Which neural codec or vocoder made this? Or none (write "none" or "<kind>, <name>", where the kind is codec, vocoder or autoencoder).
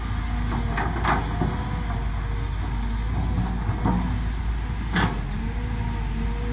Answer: none